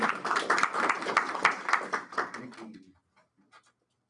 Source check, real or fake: real